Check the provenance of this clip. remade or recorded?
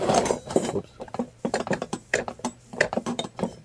remade